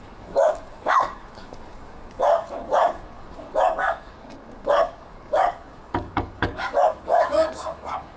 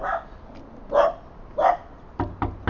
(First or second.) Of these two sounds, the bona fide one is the second